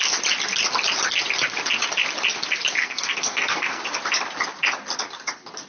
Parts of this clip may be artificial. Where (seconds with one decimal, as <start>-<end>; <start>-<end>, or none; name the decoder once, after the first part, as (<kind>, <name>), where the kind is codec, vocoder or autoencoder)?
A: 2.8-3.8 (codec, SNAC)